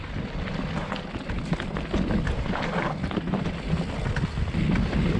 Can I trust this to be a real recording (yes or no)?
yes